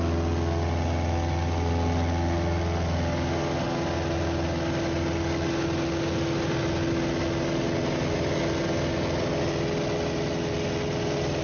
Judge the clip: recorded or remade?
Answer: recorded